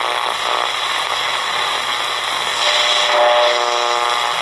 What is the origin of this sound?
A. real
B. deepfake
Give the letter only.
A